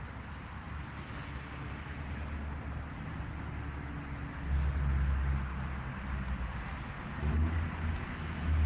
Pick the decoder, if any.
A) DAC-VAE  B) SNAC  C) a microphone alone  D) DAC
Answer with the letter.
C